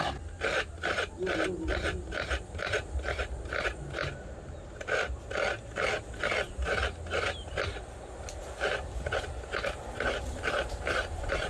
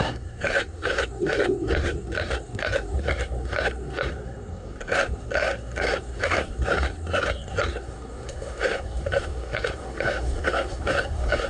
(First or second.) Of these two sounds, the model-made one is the second